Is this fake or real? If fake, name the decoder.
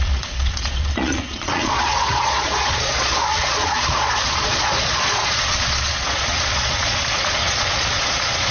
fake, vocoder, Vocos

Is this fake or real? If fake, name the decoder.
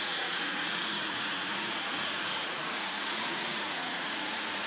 fake, vocoder, Vocos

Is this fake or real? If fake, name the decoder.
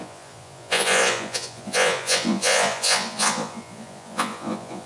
fake, vocoder, Vocos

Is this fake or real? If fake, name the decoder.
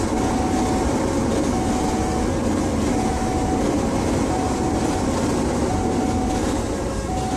real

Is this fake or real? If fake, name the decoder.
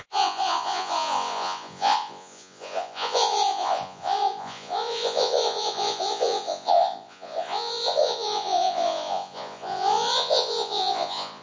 fake, vocoder, Vocos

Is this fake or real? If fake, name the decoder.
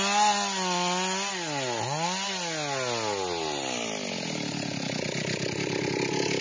real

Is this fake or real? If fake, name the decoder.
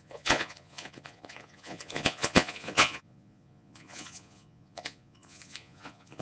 fake, vocoder, Vocos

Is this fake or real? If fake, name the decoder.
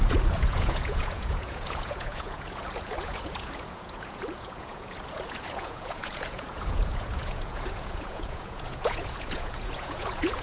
fake, vocoder, Vocos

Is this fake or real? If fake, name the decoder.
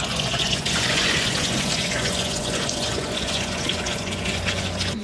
fake, vocoder, Vocos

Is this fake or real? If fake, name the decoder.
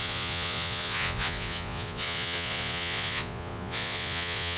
fake, vocoder, Vocos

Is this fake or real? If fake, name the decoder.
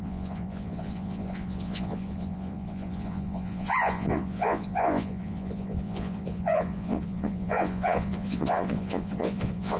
fake, vocoder, Vocos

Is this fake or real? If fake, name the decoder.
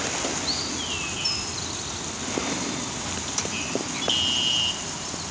real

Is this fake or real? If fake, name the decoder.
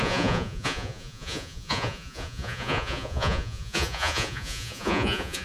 fake, vocoder, Vocos